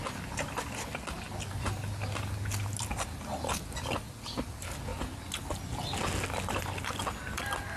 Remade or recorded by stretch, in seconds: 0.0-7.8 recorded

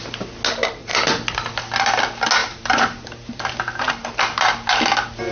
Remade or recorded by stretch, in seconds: 0.0-2.4 recorded; 2.4-3.9 remade; 3.9-5.3 recorded

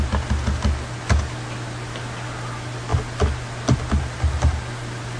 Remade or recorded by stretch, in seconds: 0.0-5.2 recorded

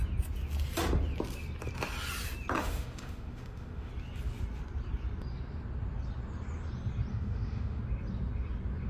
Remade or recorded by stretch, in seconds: 0.0-2.6 recorded; 2.6-3.9 remade; 3.9-7.1 recorded; 7.1-7.8 remade; 7.8-8.9 recorded

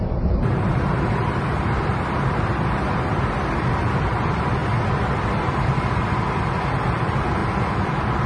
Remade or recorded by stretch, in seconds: 0.0-7.4 remade; 7.4-8.3 recorded

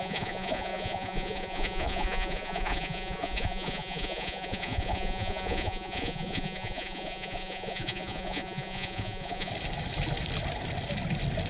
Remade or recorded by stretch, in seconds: 0.0-9.5 remade; 9.5-11.5 recorded

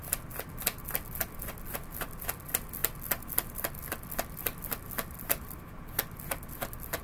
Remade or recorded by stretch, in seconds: 0.0-7.0 recorded